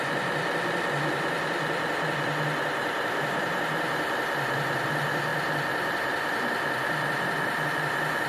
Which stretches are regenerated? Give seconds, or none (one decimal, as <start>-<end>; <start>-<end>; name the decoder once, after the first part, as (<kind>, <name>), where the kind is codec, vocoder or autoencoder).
2.8-3.6 (vocoder, BigVGAN v2)